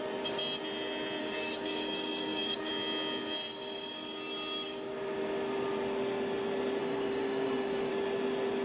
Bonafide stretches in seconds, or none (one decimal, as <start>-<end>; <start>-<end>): 0.0-1.2; 2.7-6.8; 7.9-8.6